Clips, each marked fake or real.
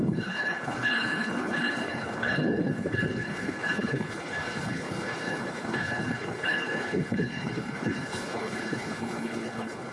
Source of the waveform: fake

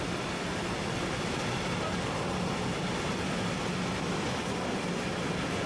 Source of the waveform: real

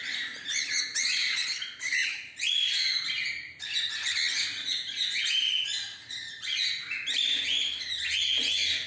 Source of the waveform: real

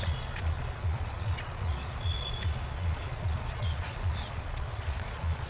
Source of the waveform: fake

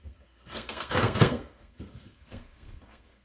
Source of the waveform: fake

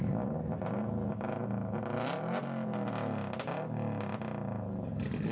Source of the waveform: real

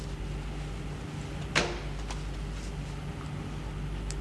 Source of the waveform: real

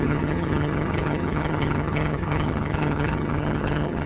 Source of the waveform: fake